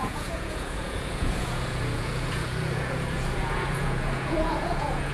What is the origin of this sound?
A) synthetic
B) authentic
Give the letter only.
A